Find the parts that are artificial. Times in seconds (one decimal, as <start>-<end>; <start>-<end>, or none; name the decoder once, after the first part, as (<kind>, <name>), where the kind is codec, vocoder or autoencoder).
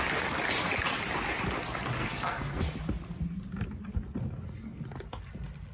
2.0-2.6 (codec, SNAC)